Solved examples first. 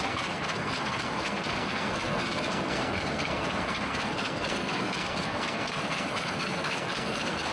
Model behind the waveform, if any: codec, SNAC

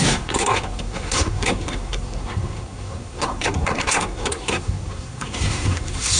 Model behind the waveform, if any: codec, SNAC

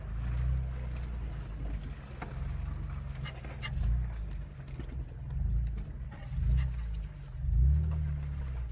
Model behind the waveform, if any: none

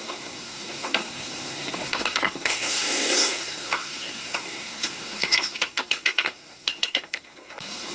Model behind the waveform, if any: codec, SNAC